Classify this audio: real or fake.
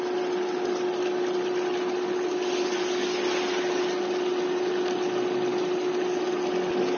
real